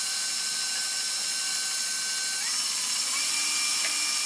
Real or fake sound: real